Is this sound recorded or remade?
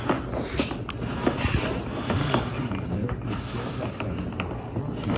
recorded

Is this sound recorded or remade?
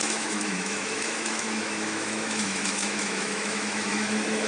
remade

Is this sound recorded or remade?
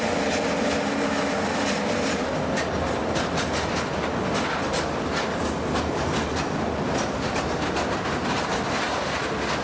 recorded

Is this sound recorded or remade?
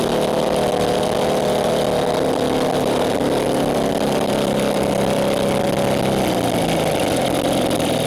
recorded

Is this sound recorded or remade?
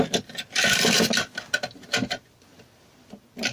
recorded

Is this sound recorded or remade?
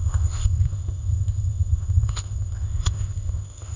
remade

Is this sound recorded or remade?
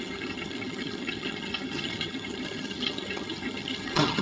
remade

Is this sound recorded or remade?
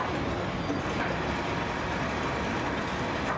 recorded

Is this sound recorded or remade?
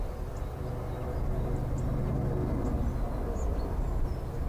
recorded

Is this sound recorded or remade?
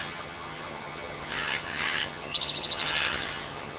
remade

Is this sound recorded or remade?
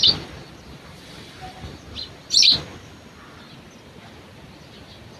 recorded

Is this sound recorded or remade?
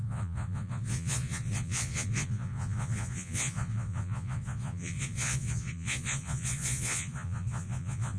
remade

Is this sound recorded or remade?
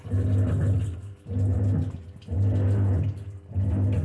recorded